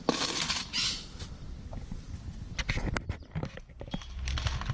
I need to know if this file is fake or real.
real